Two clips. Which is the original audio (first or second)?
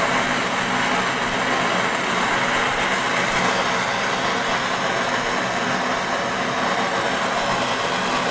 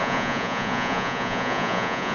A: first